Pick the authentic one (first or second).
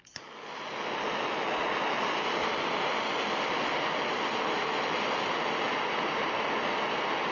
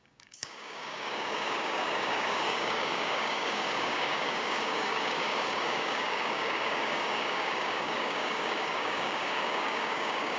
first